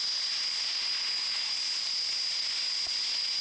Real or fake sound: real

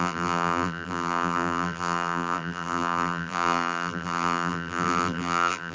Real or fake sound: fake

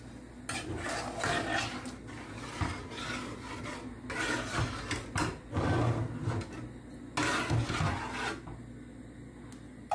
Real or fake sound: real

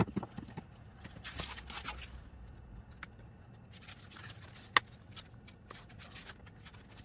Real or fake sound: real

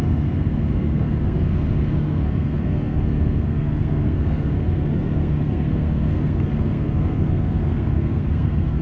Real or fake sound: fake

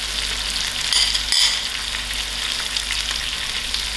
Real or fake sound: real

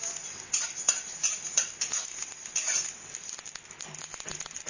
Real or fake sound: real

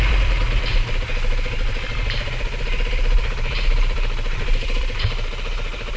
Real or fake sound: fake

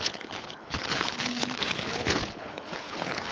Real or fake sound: fake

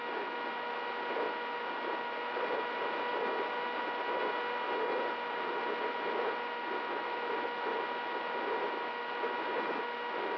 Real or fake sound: real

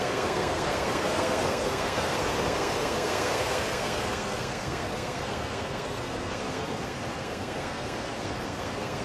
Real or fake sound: fake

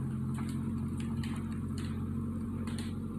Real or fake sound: real